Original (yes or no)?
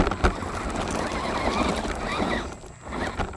yes